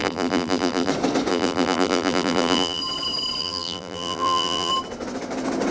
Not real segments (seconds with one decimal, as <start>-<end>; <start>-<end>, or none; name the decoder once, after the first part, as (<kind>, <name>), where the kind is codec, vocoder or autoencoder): 0.0-0.9 (vocoder, BigVGAN v2); 1.3-2.8; 3.4-4.7